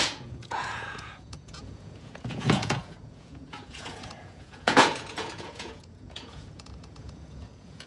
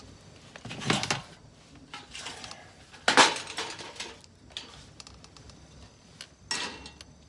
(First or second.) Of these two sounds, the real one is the second